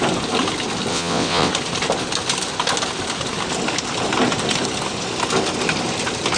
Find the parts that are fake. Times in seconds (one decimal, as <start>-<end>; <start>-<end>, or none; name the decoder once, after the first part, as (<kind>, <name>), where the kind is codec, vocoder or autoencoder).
0.9-1.5 (vocoder, WaveNeXt)